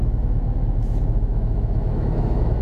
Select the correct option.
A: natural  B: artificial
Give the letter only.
B